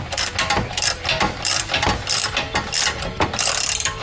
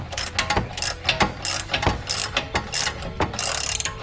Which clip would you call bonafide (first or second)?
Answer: second